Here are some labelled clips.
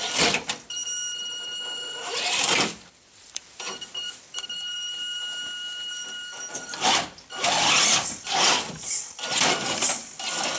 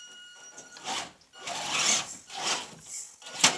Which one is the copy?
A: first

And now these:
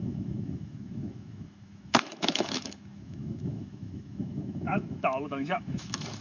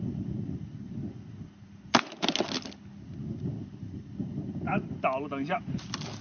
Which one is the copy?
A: first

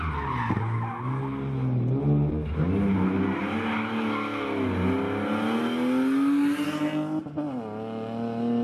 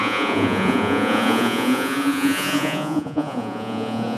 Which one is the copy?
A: second